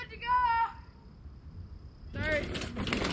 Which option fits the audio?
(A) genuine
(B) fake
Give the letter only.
A